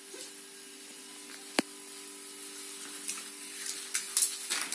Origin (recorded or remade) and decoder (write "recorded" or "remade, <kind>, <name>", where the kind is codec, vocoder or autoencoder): recorded